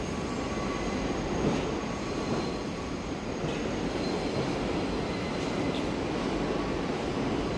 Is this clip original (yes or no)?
yes